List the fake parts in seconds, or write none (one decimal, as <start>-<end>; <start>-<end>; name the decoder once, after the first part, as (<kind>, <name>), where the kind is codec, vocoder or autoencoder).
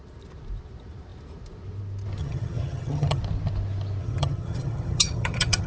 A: 2.2-3.2 (vocoder, HiFi-GAN); 4.0-5.7